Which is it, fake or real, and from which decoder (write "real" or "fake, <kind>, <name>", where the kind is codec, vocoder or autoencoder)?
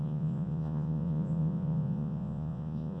fake, vocoder, Vocos